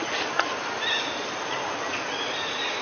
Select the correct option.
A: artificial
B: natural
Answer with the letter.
B